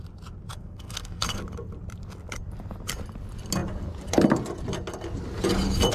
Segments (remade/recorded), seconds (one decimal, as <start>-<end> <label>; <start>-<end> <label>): 0.0-0.5 recorded; 0.5-1.4 remade; 1.4-5.9 recorded